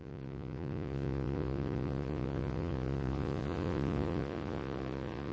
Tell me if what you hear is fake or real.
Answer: fake